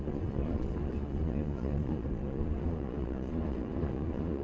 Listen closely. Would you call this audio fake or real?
fake